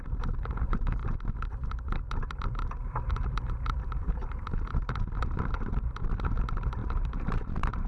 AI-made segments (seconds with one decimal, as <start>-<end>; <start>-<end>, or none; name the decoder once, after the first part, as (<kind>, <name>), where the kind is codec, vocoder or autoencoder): 0.0-1.0 (vocoder, BigVGAN v2); 2.0-7.9